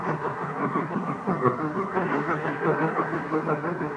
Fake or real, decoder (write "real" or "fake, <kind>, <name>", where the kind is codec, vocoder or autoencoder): fake, codec, SNAC